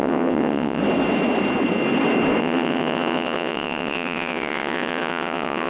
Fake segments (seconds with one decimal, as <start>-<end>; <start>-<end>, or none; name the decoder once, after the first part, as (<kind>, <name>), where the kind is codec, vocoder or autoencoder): 0.0-0.8 (vocoder, WaveNeXt); 2.4-5.7